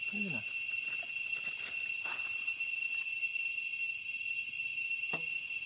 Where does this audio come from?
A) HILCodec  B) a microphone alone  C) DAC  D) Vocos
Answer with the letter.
B